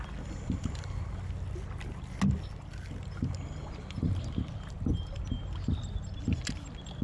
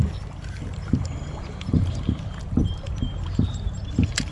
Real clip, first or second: first